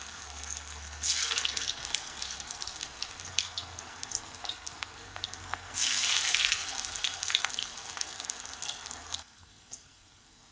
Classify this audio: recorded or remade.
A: remade